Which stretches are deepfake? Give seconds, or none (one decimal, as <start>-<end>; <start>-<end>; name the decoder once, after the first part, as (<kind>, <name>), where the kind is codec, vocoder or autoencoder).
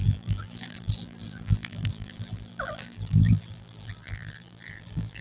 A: 0.0-5.2 (vocoder, BigVGAN v2)